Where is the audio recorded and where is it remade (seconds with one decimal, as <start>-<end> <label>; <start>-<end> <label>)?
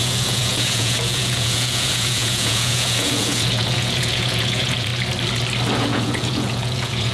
0.0-4.9 remade; 4.9-5.8 recorded; 5.8-7.1 remade